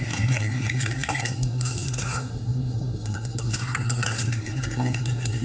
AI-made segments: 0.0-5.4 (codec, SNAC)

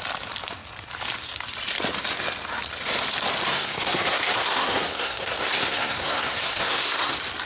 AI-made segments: 3.5-7.1 (codec, SNAC)